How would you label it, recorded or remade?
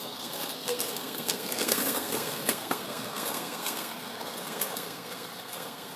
remade